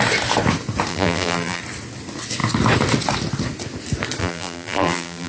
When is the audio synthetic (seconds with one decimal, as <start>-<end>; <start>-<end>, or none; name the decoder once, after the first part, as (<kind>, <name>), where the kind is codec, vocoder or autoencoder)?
0.9-1.6 (vocoder, BigVGAN v2); 4.2-5.3